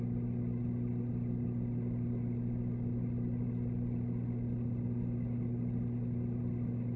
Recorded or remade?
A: recorded